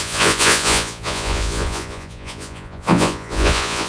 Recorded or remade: remade